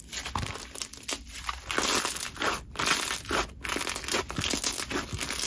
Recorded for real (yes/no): yes